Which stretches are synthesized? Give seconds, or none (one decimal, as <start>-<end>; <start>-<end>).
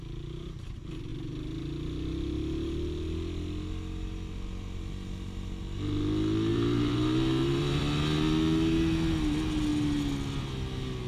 6.5-7.8